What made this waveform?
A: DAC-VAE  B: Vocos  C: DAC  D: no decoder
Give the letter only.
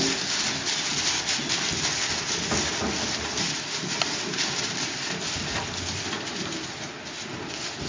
D